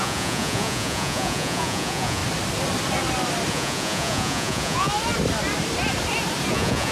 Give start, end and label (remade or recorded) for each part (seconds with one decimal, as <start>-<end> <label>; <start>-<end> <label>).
0.0-2.2 remade; 2.2-3.5 recorded; 3.5-4.9 remade; 4.9-6.5 recorded; 6.5-6.9 remade